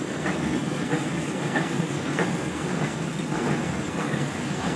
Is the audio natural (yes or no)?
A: no